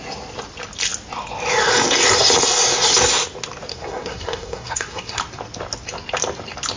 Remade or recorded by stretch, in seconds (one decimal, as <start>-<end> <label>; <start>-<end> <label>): 0.0-3.7 recorded; 3.7-5.2 remade; 5.2-6.8 recorded